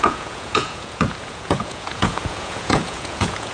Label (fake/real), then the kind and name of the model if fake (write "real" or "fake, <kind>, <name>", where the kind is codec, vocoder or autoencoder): fake, vocoder, Vocos